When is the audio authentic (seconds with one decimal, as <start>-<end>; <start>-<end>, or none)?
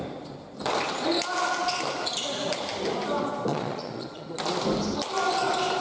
0.0-3.5; 4.3-5.8